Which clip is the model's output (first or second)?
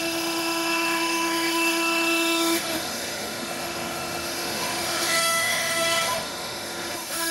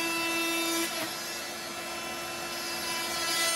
first